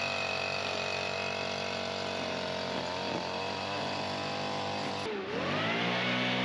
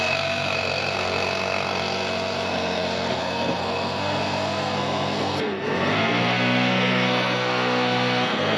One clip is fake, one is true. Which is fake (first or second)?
second